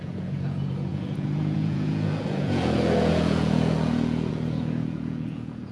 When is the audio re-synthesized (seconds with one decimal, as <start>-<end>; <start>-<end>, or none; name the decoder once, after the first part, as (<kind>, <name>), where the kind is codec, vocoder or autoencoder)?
0.0-5.7 (vocoder, Vocos)